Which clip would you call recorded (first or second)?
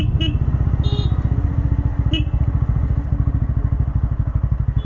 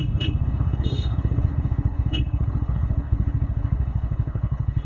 first